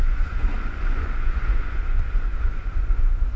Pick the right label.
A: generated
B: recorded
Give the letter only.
A